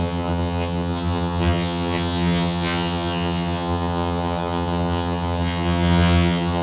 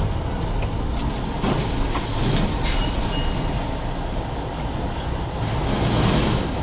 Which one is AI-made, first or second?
first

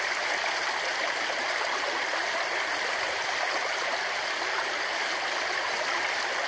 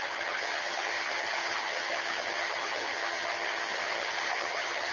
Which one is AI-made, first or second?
second